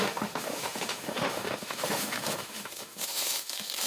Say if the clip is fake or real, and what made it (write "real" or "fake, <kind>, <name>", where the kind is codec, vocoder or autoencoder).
fake, autoencoder, DAC-VAE